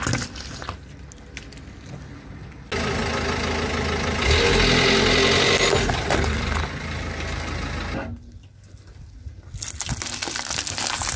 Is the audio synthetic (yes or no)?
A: no